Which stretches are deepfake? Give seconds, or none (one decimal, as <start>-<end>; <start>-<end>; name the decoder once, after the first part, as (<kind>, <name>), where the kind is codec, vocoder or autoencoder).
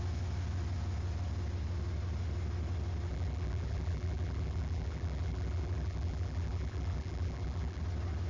3.1-7.8 (vocoder, BigVGAN v2)